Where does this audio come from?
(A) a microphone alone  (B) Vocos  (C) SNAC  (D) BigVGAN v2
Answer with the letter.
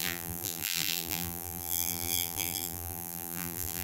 D